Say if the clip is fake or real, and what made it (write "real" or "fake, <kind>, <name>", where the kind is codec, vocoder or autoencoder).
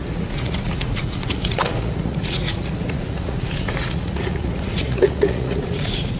fake, vocoder, Vocos